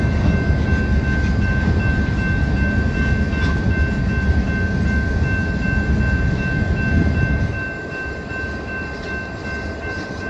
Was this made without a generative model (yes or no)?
yes